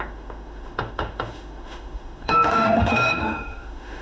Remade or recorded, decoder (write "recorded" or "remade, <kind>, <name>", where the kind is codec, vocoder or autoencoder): remade, autoencoder, DAC-VAE